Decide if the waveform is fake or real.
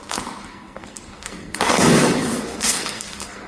fake